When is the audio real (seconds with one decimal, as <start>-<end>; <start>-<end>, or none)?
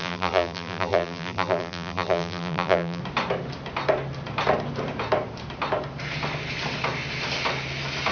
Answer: 3.0-8.1